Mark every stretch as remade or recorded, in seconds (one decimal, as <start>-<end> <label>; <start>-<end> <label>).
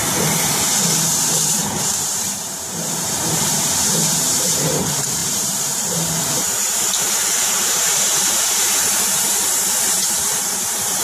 0.0-1.2 recorded; 1.2-11.0 remade